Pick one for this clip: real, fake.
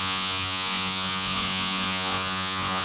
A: fake